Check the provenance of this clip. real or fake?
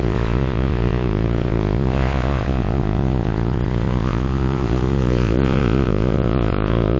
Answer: fake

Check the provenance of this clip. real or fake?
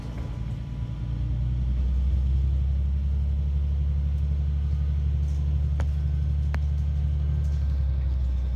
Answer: real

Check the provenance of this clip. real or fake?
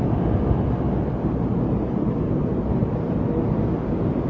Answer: real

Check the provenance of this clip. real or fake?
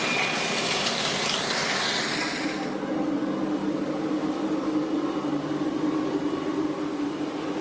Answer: real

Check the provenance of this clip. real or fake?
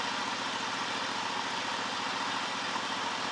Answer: real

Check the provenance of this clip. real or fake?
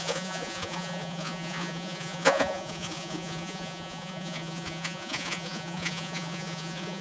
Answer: fake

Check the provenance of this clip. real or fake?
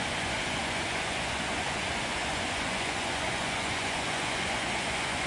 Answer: fake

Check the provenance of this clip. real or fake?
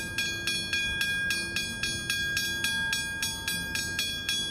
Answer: real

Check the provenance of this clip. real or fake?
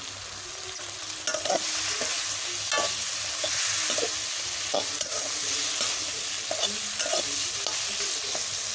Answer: real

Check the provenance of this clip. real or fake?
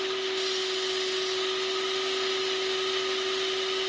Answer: real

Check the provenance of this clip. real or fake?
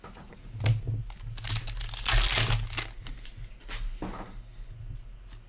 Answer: real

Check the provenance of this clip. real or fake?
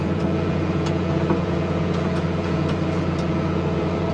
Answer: fake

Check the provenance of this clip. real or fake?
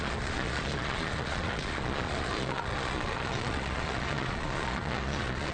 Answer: fake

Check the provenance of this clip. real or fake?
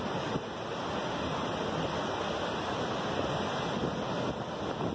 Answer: real